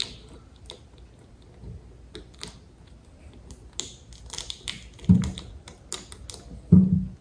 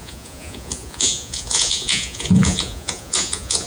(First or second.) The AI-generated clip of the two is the second